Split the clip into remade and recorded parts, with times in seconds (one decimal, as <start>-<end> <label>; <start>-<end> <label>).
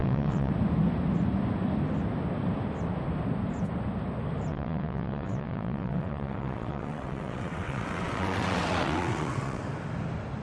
0.0-0.5 remade; 0.5-4.5 recorded; 4.5-9.6 remade; 9.6-10.4 recorded